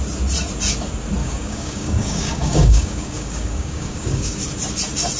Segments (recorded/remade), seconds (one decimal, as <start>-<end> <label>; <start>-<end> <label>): 0.0-1.2 recorded; 1.2-4.3 remade; 4.3-5.2 recorded